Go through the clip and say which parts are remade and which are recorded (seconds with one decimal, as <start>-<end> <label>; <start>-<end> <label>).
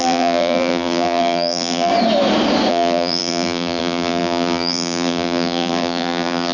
0.0-1.9 remade; 1.9-2.7 recorded; 2.7-6.5 remade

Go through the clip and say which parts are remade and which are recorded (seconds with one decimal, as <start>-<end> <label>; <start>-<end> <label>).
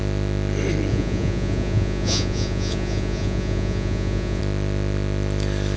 0.0-0.9 recorded; 0.9-4.4 remade; 4.4-5.8 recorded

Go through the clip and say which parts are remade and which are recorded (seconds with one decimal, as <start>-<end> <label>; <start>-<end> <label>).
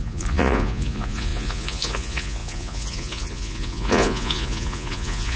0.0-5.4 remade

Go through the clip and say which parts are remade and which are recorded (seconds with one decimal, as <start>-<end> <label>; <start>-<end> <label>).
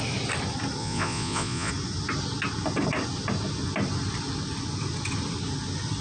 0.0-0.8 recorded; 0.8-1.7 remade; 1.7-6.0 recorded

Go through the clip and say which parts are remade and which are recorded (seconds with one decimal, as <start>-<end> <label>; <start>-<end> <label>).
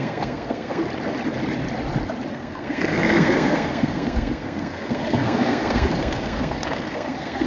0.0-0.8 remade; 0.8-2.3 recorded; 2.3-7.5 remade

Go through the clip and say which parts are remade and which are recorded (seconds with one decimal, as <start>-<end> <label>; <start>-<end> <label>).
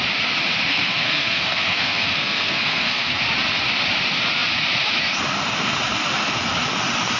0.0-0.7 recorded; 0.7-3.2 remade; 3.2-7.2 recorded